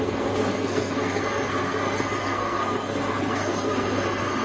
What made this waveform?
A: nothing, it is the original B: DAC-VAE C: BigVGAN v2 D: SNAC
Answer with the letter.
D